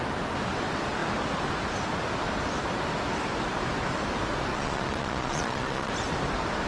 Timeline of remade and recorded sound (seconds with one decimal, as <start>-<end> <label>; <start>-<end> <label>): 0.0-4.5 recorded; 4.5-5.9 remade; 5.9-6.7 recorded